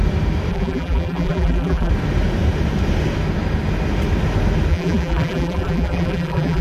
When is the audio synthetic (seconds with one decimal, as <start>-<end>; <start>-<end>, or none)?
0.5-1.9; 4.7-6.6